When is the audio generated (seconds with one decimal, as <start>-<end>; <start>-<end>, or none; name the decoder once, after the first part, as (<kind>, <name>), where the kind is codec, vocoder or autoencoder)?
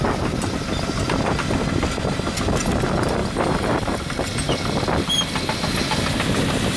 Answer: 3.2-4.1 (vocoder, BigVGAN v2)